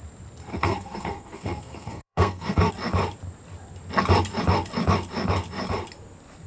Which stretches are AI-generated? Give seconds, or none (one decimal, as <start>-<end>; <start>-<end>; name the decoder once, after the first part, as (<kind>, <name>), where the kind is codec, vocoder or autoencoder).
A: 0.5-2.7 (codec, SNAC)